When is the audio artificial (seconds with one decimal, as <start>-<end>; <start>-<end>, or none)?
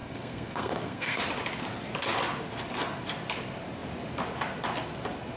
0.0-1.2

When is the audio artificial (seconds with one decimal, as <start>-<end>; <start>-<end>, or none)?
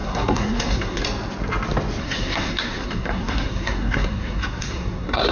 0.0-1.0; 2.0-5.3